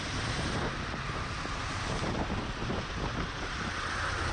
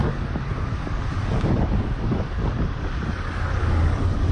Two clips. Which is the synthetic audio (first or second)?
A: second